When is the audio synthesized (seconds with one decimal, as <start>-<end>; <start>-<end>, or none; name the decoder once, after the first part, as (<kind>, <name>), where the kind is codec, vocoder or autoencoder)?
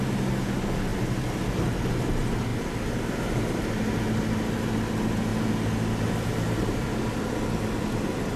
2.5-3.6 (vocoder, BigVGAN v2)